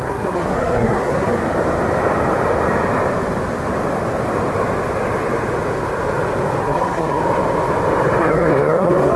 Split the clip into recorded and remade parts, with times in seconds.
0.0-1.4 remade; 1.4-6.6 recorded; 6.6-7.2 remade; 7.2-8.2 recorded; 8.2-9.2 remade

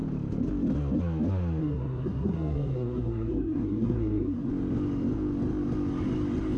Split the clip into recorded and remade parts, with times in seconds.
0.0-1.6 recorded; 1.6-4.5 remade; 4.5-6.6 recorded

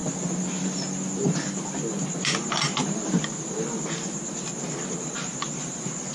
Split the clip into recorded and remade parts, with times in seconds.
0.0-6.1 recorded

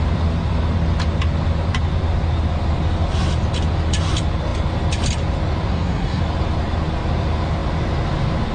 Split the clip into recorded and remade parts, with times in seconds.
0.0-5.7 recorded; 5.7-6.2 remade; 6.2-8.5 recorded

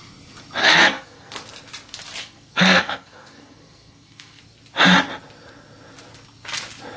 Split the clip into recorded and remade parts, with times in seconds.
0.0-0.6 recorded; 0.6-1.3 remade; 1.3-2.2 recorded; 2.2-4.4 remade; 4.4-7.0 recorded

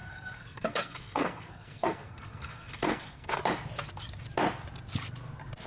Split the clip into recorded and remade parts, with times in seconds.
0.0-3.4 remade; 3.4-5.7 recorded

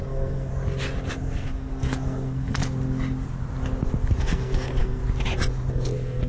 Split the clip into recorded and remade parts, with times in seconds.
0.0-0.5 remade; 0.5-1.2 recorded; 1.2-2.6 remade; 2.6-4.2 recorded; 4.2-5.0 remade; 5.0-5.7 recorded; 5.7-6.3 remade

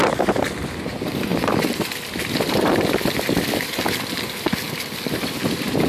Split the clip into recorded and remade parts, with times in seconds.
0.0-5.9 recorded